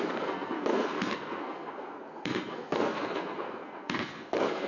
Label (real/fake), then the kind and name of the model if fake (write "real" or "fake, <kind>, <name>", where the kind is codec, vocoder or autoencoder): fake, codec, SNAC